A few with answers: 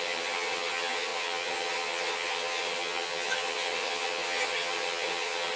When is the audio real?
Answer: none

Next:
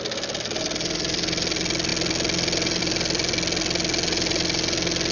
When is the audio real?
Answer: 0.0-5.1

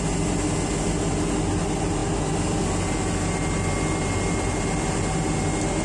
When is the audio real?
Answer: 0.0-5.8